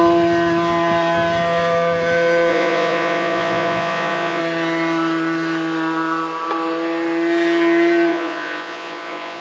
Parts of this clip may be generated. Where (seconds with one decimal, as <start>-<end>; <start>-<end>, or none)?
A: 2.5-4.4; 8.1-9.4